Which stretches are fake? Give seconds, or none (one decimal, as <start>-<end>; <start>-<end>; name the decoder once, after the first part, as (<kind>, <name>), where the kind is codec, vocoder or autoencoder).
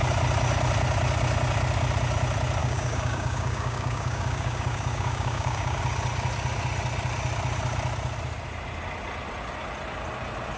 2.6-5.8 (codec, DAC)